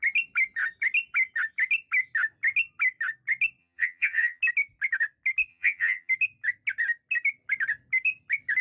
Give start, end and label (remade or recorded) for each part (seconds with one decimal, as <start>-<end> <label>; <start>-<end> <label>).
0.0-3.6 recorded; 3.6-4.4 remade; 4.4-5.5 recorded; 5.5-6.1 remade; 6.1-8.6 recorded